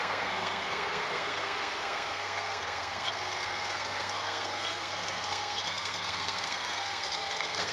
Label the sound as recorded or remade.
remade